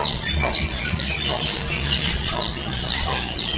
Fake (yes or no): yes